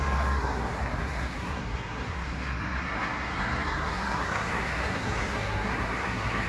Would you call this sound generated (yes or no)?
yes